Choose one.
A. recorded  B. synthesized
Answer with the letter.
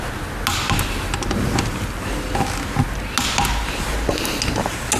A